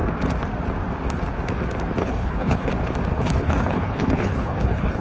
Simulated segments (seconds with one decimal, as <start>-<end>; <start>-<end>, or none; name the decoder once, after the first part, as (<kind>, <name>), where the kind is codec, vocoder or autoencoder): 2.0-2.7 (codec, HILCodec); 3.1-5.0